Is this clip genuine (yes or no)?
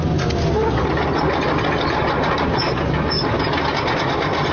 yes